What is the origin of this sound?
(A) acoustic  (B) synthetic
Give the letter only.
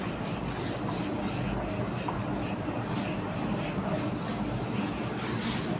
A